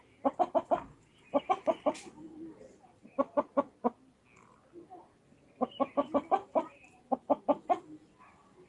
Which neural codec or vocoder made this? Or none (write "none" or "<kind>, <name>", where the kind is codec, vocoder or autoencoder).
none